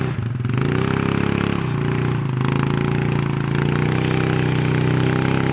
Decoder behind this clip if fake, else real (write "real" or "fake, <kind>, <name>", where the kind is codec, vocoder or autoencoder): real